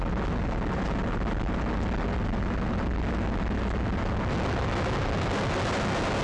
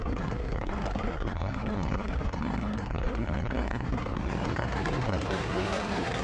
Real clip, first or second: first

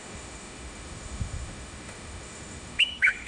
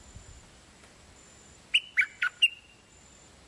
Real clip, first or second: second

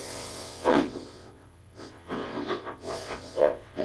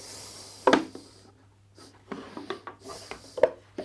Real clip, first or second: second